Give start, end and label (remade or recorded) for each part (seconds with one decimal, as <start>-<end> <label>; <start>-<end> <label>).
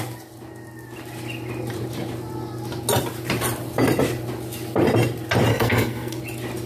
0.0-5.5 recorded; 5.5-6.2 remade; 6.2-6.7 recorded